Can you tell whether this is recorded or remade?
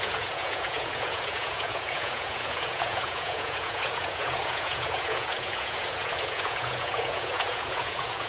remade